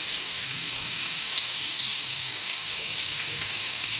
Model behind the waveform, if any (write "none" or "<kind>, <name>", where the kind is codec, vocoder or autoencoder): codec, DAC